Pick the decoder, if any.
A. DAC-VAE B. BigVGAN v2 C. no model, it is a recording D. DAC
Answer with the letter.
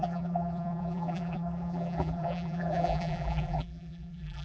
B